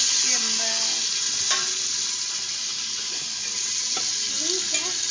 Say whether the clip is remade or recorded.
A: recorded